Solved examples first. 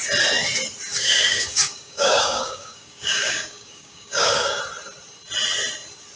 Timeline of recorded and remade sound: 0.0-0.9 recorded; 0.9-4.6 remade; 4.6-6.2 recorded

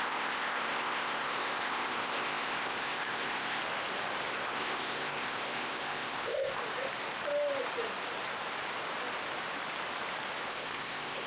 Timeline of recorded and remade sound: 0.0-3.6 remade; 3.6-4.3 recorded; 4.3-6.6 remade; 6.6-10.5 recorded; 10.5-11.3 remade

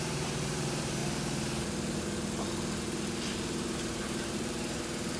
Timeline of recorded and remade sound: 0.0-1.0 remade; 1.0-3.3 recorded; 3.3-5.2 remade

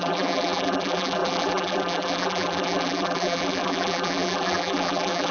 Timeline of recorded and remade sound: 0.0-5.3 remade

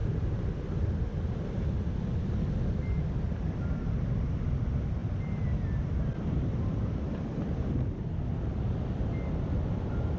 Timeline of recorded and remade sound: 0.0-0.5 remade; 0.5-10.2 recorded

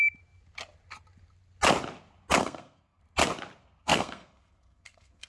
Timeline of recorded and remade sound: 0.0-2.4 recorded; 2.4-3.0 remade; 3.0-3.8 recorded; 3.8-5.3 remade